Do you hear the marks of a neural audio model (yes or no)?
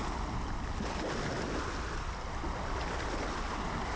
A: yes